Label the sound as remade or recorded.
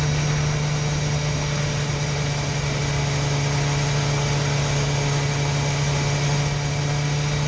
recorded